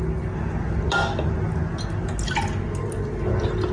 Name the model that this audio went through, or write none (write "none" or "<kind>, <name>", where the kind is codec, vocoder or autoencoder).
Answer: none